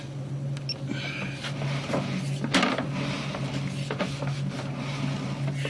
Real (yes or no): yes